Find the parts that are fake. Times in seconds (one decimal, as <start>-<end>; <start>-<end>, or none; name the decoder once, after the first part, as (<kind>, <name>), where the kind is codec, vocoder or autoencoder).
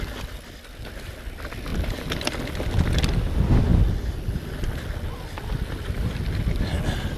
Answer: none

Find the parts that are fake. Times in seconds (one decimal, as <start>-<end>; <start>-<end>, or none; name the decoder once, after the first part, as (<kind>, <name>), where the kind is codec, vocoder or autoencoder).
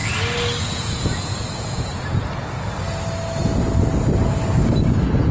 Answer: 0.6-1.9 (vocoder, Vocos)